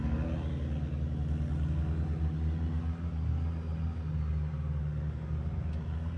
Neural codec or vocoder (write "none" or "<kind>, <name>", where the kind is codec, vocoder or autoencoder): none